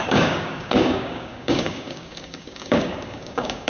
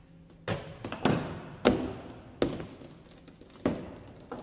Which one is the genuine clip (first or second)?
second